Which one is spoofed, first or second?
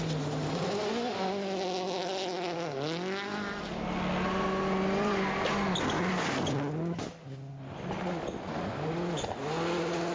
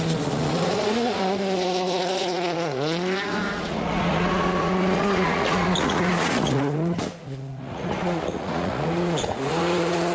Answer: second